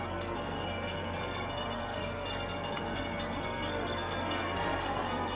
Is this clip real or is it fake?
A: fake